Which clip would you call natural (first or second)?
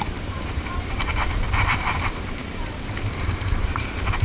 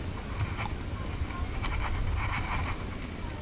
second